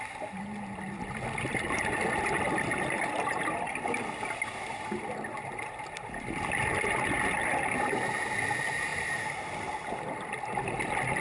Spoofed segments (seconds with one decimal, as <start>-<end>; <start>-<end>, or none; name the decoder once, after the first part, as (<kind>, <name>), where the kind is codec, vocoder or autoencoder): none